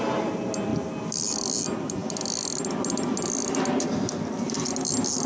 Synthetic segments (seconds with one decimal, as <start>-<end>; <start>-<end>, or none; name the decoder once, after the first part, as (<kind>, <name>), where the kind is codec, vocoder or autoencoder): none